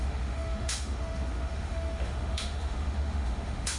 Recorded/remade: remade